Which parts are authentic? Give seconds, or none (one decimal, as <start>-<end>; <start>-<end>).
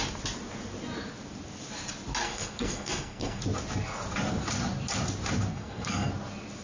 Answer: 0.0-2.2; 3.4-5.5; 6.1-6.6